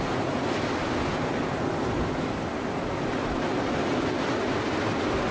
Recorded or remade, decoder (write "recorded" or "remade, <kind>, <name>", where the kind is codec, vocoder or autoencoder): recorded